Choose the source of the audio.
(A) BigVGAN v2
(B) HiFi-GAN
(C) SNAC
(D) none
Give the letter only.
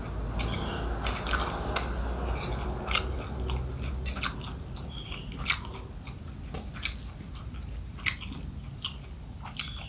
D